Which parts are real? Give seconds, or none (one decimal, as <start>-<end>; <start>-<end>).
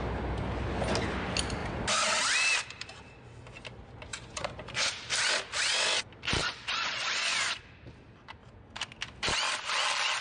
0.0-4.1; 4.9-6.4; 7.6-10.2